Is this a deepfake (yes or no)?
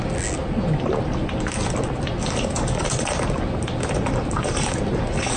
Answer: no